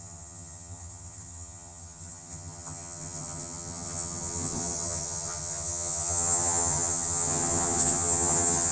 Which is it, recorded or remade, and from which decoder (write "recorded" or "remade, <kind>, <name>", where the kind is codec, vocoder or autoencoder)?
remade, vocoder, HiFi-GAN